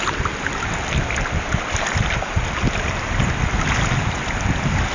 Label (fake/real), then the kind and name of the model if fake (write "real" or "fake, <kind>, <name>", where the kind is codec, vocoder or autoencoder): real